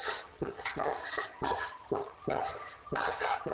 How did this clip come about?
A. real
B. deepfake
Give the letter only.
B